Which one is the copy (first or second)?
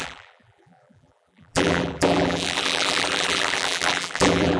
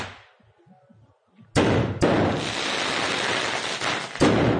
first